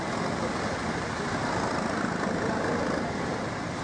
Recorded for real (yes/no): yes